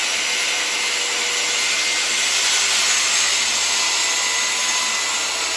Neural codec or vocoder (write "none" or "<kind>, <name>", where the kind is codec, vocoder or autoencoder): none